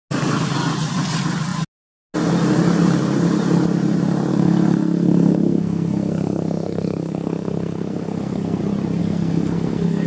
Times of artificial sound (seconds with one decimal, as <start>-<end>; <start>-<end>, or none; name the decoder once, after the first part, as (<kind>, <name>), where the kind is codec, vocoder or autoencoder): 4.3-8.6 (codec, SNAC); 9.0-10.1